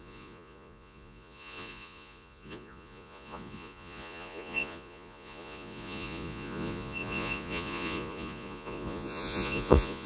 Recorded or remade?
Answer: remade